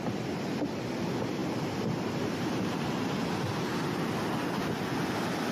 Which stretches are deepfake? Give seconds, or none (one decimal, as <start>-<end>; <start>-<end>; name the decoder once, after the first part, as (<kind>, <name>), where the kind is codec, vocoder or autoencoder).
none